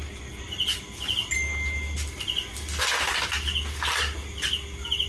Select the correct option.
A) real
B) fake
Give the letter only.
A